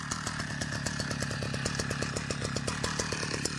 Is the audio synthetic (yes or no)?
no